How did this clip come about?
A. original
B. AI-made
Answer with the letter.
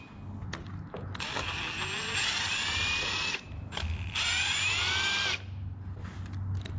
A